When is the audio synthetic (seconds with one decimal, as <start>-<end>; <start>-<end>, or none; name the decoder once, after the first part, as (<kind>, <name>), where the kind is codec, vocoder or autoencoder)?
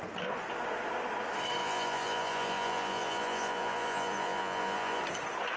1.6-5.0 (vocoder, Vocos)